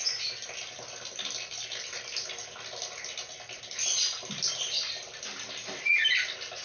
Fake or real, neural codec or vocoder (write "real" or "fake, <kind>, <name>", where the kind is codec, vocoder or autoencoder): real